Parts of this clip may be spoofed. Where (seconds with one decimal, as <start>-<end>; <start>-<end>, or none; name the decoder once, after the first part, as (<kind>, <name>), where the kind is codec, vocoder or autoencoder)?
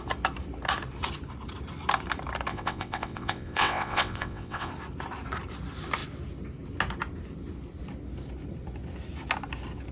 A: 2.5-4.7 (vocoder, WaveNeXt)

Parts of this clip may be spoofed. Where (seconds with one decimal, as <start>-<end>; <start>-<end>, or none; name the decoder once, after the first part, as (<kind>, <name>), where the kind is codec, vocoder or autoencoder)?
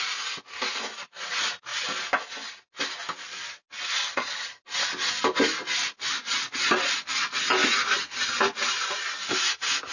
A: 4.0-4.6 (vocoder, HiFi-GAN)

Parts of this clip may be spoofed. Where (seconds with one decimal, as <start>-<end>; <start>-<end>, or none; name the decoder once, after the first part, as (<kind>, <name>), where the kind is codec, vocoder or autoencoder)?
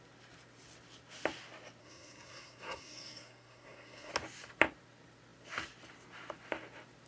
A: 1.8-4.1 (codec, SNAC)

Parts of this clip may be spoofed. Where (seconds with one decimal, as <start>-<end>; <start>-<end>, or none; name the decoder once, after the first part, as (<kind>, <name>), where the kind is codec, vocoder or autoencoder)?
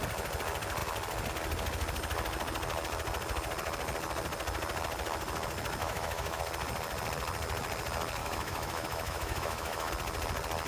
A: 5.8-6.4 (autoencoder, DAC-VAE); 8.2-9.9